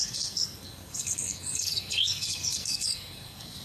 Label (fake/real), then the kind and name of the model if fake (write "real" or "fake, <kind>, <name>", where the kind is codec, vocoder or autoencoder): fake, codec, SNAC